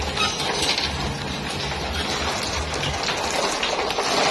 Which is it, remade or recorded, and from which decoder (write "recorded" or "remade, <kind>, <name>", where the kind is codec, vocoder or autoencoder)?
recorded